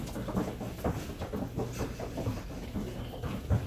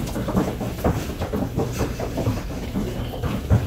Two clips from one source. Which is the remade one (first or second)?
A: second